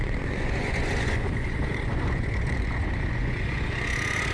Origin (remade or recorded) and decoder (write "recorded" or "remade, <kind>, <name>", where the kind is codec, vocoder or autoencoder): remade, vocoder, Vocos